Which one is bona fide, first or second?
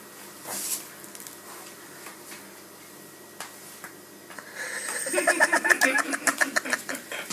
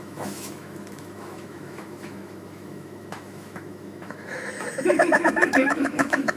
first